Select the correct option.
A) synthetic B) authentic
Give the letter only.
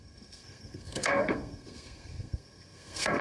A